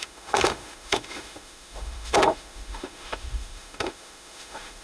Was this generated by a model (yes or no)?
yes